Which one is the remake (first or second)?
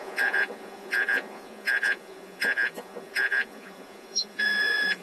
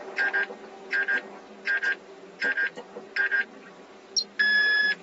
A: first